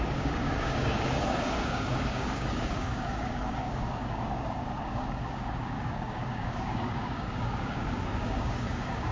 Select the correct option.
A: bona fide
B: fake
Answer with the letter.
B